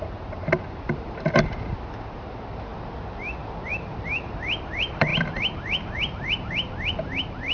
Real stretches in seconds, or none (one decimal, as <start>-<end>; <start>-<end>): 2.7-3.7